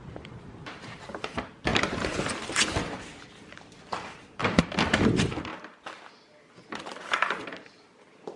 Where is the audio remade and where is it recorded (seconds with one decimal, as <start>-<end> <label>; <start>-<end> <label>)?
0.0-5.5 remade; 5.5-6.8 recorded; 6.8-8.4 remade